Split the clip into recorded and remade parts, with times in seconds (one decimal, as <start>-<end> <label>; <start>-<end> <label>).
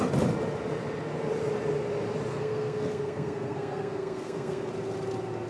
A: 0.0-2.3 recorded; 2.3-4.7 remade; 4.7-5.5 recorded